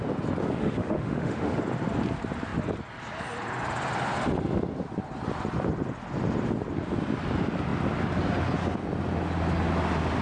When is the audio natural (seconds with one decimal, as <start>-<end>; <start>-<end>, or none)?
0.0-0.6; 1.6-10.2